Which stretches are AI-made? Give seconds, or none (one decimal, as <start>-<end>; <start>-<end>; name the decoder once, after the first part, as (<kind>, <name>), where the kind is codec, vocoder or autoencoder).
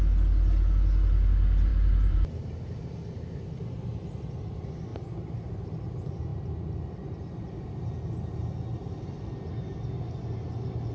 1.7-3.8 (vocoder, BigVGAN v2); 4.9-5.7